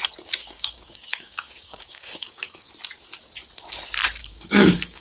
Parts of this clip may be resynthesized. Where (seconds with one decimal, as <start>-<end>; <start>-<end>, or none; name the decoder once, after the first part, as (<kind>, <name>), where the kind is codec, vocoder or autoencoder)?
0.4-2.7 (codec, DAC); 4.2-5.0